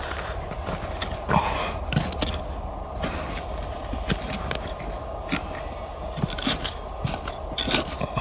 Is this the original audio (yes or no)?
yes